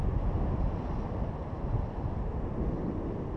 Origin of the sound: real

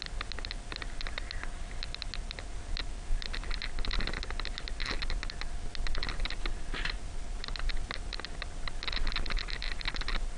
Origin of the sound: real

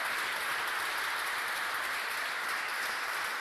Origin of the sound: real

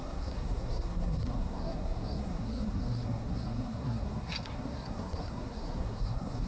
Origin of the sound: fake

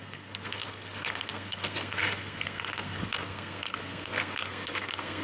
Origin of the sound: fake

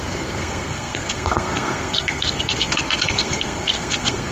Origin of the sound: fake